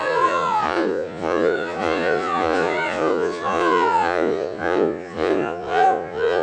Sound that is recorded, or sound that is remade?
remade